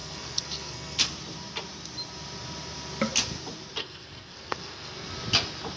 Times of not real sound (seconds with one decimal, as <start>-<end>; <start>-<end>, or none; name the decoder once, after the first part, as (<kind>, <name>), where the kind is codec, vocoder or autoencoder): 0.0-1.1 (codec, SNAC); 3.8-5.1